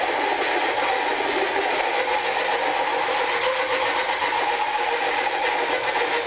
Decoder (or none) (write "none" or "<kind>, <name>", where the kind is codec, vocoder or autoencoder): none